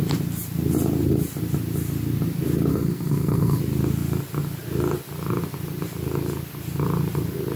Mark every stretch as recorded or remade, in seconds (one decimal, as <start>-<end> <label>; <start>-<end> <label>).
0.0-2.7 recorded; 2.7-3.6 remade; 3.6-7.6 recorded